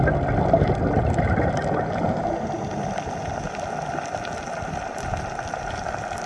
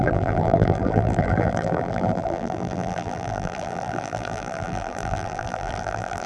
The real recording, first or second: first